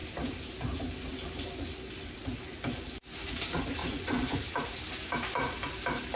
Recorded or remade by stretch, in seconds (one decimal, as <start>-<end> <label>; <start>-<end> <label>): 0.0-3.8 recorded; 3.8-4.4 remade; 4.4-6.2 recorded